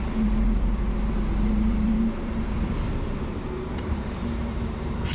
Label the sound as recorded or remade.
remade